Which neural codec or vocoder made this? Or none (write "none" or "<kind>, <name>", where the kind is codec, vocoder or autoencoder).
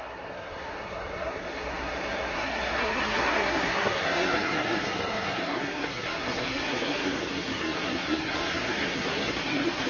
codec, SNAC